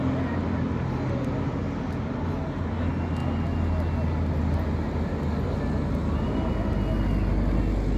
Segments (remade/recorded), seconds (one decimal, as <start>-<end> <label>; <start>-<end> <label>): 0.0-8.0 recorded